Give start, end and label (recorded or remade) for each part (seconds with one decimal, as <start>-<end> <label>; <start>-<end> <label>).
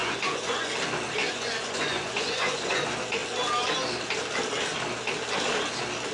0.0-0.7 remade; 0.7-1.2 recorded; 1.2-2.8 remade; 2.8-6.1 recorded